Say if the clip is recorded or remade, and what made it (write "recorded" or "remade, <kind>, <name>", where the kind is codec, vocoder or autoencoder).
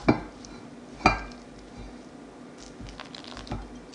recorded